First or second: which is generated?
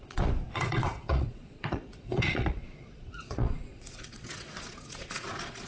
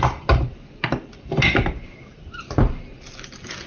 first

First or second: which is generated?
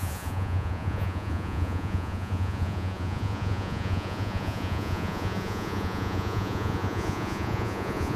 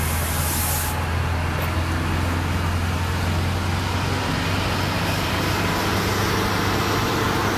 first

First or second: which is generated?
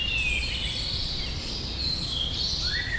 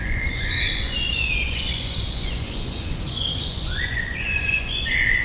second